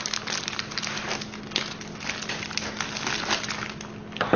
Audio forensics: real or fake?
real